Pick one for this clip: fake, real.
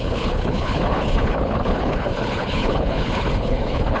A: fake